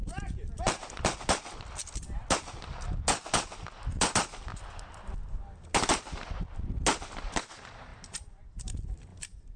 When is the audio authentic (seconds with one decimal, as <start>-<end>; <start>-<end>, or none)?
0.0-9.6